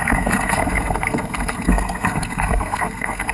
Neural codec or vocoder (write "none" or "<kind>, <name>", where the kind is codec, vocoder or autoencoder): codec, SNAC